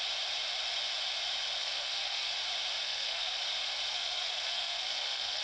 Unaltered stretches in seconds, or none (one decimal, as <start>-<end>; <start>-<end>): 0.0-1.6; 2.3-2.8; 3.4-3.9